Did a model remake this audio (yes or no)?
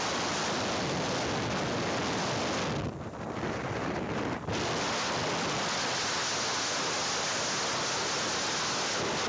no